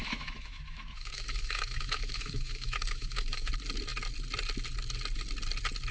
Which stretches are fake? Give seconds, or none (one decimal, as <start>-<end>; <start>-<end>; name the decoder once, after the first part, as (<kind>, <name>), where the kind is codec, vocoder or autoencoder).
0.0-3.5 (autoencoder, DAC-VAE)